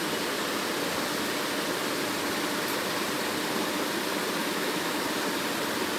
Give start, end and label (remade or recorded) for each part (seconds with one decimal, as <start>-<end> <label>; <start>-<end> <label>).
0.0-4.4 recorded; 4.4-5.0 remade; 5.0-6.0 recorded

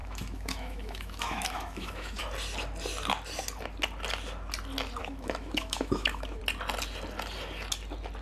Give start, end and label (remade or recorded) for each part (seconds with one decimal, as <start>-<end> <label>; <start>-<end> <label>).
0.0-2.2 remade; 2.2-5.0 recorded; 5.0-6.4 remade; 6.4-8.2 recorded

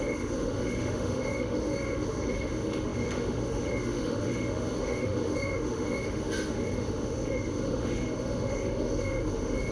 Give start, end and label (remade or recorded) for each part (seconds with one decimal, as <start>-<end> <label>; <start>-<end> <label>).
0.0-9.7 remade

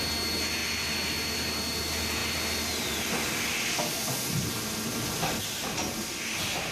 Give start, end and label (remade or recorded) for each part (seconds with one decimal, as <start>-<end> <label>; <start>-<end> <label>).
0.0-6.7 recorded